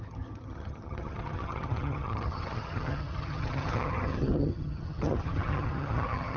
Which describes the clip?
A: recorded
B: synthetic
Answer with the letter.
B